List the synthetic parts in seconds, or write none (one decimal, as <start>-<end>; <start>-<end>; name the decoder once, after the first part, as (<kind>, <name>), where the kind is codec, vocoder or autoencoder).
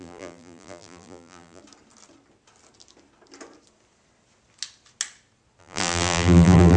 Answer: 0.0-1.6 (vocoder, BigVGAN v2); 5.6-6.8